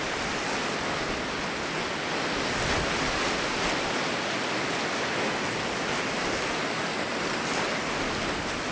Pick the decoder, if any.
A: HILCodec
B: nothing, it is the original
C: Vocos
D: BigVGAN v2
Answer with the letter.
B